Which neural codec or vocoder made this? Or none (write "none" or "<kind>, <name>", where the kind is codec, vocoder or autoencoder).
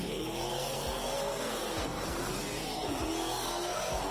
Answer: codec, SNAC